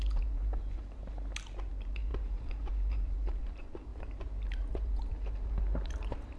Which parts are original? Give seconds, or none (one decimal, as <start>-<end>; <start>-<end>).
1.0-1.7; 3.9-4.5